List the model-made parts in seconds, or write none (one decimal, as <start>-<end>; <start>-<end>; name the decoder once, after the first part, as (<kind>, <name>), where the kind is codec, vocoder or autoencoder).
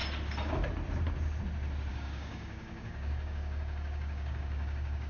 1.9-5.1 (codec, DAC)